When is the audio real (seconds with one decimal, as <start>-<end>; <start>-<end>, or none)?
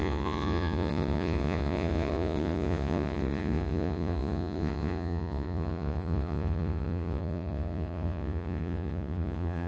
none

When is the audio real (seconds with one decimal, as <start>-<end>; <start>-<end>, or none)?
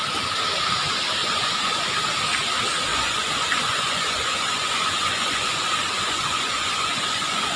0.0-1.2; 1.9-2.9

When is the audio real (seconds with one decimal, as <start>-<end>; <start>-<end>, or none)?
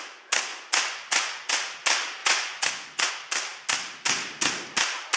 0.0-0.5; 1.5-2.2; 3.1-5.2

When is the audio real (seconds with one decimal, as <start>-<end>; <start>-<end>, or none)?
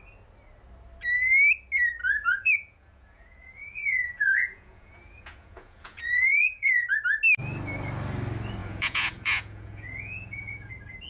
0.0-2.0; 6.9-8.6; 10.7-11.1